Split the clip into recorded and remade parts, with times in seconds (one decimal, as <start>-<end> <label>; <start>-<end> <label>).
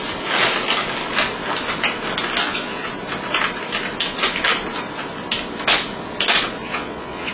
0.0-2.4 recorded; 2.4-2.9 remade; 2.9-6.6 recorded; 6.6-7.3 remade